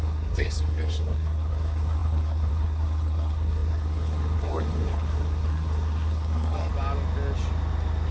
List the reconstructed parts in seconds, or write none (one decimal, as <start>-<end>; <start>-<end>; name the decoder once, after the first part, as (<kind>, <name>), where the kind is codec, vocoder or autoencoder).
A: 0.0-6.7 (codec, SNAC)